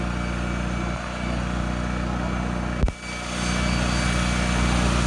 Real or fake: real